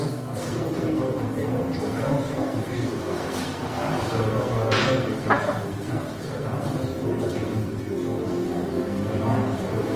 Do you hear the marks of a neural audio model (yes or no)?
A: yes